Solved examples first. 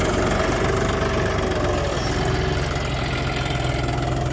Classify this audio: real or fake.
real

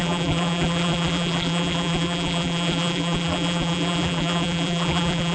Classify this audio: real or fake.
fake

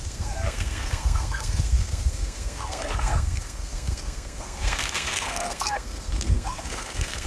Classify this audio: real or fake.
fake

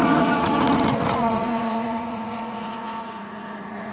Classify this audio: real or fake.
fake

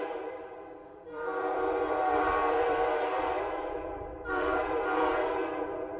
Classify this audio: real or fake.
fake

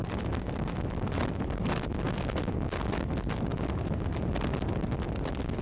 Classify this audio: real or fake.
real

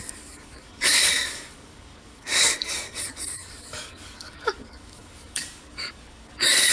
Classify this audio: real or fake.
fake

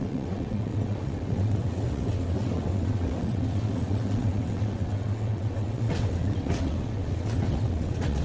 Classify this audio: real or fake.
fake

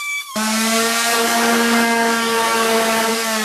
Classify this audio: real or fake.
fake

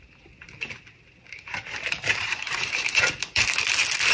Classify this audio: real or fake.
fake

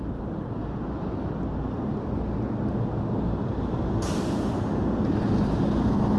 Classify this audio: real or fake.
real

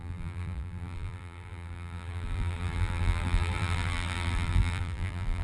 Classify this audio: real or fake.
fake